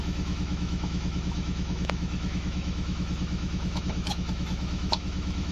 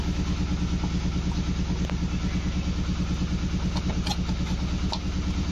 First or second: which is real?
second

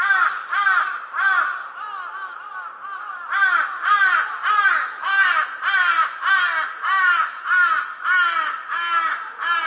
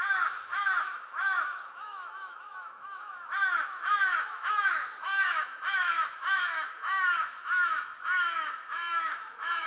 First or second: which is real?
first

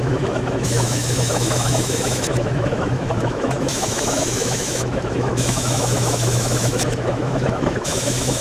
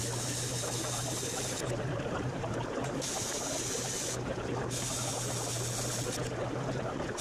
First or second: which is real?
second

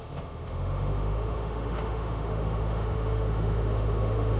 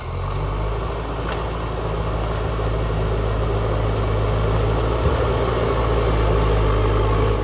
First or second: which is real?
second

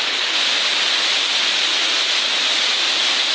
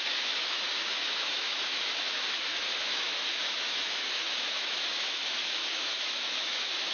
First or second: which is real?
first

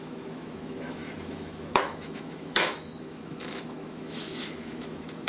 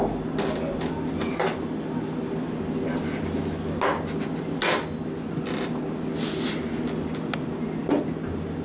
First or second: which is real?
second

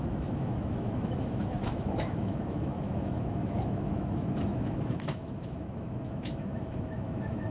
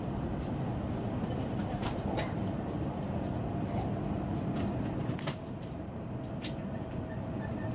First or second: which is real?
second